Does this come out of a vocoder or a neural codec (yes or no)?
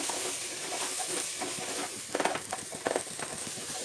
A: no